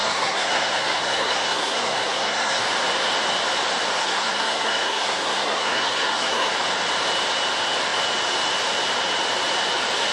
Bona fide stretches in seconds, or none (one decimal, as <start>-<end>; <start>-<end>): 2.6-4.0; 6.5-10.1